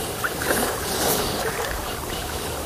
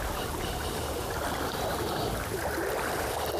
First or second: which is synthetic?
first